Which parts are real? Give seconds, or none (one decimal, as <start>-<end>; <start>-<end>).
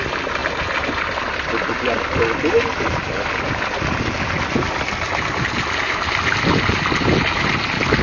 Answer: 0.0-8.0